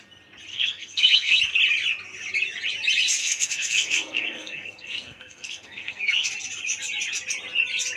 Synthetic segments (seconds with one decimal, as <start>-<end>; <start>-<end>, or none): 0.5-1.4; 3.2-6.3

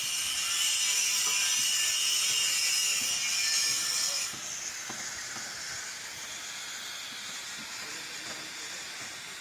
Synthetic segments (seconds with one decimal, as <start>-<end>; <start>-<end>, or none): none